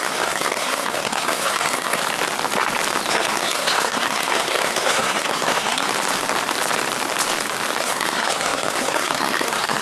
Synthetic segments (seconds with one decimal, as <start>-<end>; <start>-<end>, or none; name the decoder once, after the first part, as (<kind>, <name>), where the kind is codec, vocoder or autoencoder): 0.0-2.0 (codec, SNAC); 3.1-5.9; 7.8-9.8